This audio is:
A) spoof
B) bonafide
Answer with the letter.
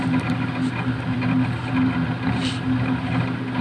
B